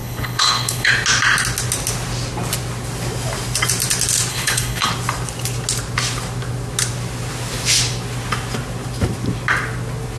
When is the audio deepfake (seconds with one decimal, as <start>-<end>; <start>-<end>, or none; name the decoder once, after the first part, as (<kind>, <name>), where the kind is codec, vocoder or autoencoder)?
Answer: 0.0-0.9 (codec, HILCodec); 4.3-4.9